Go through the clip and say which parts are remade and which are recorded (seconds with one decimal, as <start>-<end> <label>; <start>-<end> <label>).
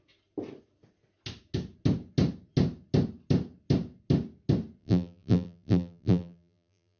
0.0-4.8 recorded; 4.8-7.0 remade